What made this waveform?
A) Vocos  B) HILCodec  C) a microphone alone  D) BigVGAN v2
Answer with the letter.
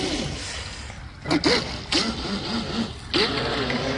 C